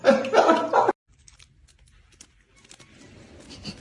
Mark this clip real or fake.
real